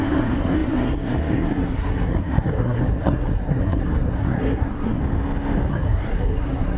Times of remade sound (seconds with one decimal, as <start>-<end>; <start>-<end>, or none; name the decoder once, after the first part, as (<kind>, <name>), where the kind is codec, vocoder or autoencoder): 0.0-5.0 (codec, SNAC); 5.7-6.8